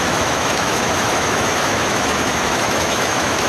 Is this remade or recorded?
remade